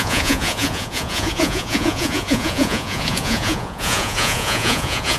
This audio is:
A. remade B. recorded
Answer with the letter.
A